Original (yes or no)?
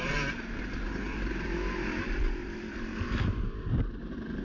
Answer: no